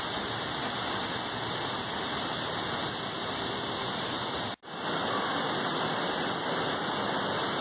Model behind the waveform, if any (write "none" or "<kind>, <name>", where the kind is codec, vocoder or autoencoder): none